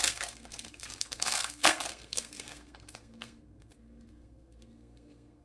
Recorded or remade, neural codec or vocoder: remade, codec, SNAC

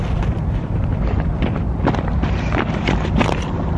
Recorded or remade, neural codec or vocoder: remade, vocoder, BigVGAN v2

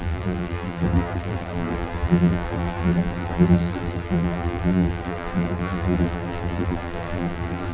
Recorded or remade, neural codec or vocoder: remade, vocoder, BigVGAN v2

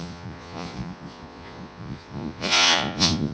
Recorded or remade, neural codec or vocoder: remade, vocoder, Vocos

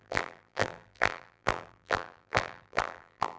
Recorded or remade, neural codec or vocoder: remade, vocoder, BigVGAN v2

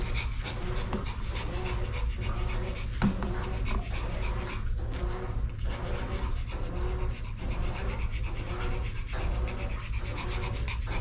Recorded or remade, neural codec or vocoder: recorded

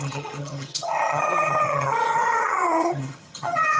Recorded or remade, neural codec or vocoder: remade, vocoder, HiFi-GAN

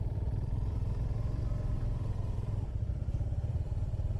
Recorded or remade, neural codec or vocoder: remade, vocoder, BigVGAN v2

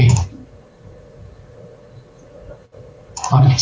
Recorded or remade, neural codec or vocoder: remade, vocoder, Vocos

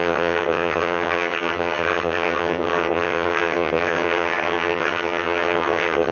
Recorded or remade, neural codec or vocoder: remade, vocoder, HiFi-GAN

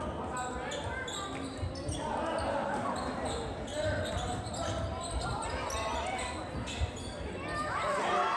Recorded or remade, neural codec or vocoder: recorded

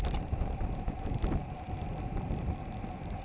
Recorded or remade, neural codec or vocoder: recorded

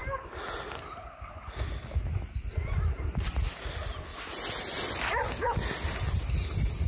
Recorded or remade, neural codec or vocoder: recorded